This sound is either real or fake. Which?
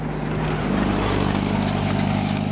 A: real